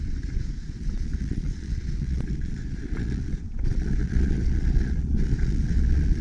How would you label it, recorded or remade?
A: remade